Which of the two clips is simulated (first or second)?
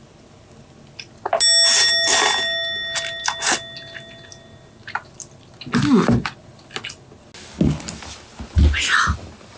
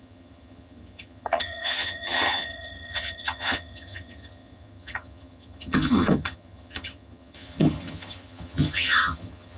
second